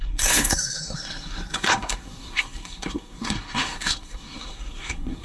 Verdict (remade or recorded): remade